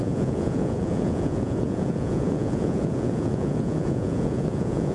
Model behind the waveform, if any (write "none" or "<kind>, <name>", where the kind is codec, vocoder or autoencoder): vocoder, Vocos